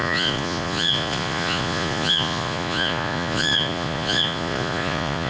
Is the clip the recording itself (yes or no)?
no